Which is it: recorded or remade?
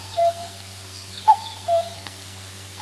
remade